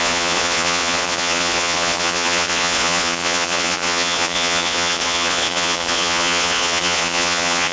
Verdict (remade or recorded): remade